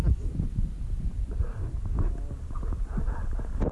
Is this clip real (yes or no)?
yes